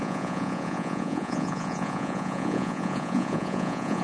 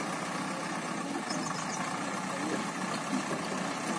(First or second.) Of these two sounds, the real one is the second